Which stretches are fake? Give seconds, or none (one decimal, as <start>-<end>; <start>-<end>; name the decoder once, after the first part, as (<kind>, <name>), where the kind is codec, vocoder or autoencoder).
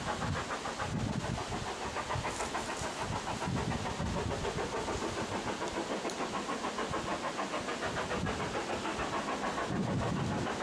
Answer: none